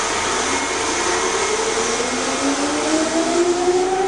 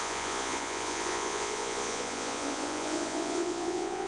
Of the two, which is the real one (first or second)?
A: first